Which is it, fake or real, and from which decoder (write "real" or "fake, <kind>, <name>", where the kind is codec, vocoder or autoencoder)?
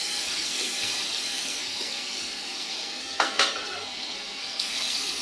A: fake, codec, SNAC